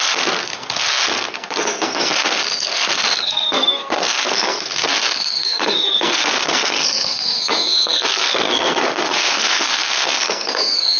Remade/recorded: remade